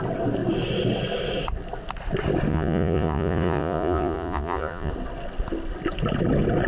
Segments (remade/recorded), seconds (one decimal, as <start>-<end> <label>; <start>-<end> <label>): 0.0-2.5 recorded; 2.5-4.9 remade; 4.9-6.7 recorded